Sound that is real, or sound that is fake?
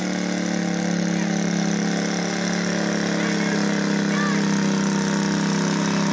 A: real